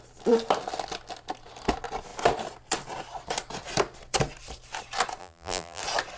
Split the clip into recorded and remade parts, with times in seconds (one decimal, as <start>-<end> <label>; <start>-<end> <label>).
0.0-5.2 recorded; 5.2-5.8 remade; 5.8-6.2 recorded